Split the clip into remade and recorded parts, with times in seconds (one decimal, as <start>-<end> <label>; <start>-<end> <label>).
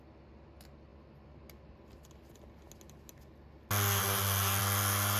0.0-5.2 recorded